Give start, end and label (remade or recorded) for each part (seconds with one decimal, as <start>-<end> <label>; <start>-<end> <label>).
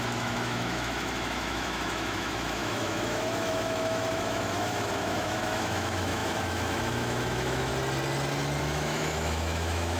0.0-7.7 remade; 7.7-8.6 recorded; 8.6-10.0 remade